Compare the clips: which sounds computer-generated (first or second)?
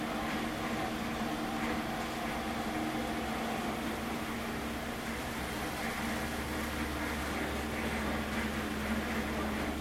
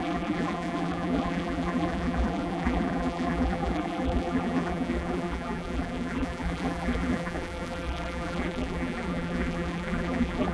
second